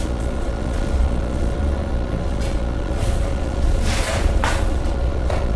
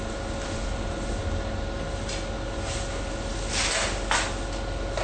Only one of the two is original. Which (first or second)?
second